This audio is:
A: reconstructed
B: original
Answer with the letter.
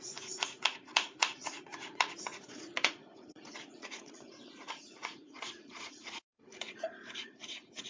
A